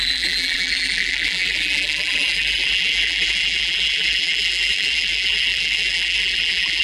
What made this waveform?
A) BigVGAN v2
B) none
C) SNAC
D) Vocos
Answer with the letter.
A